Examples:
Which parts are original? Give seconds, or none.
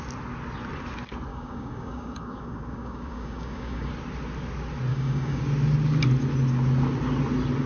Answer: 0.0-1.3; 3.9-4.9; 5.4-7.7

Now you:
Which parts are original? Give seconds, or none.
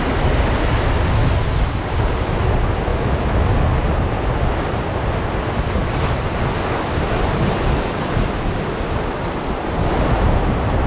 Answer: 0.0-10.9